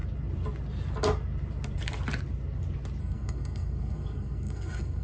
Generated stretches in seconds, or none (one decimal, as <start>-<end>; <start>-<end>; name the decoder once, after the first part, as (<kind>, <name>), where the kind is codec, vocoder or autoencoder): 3.0-5.0 (codec, SNAC)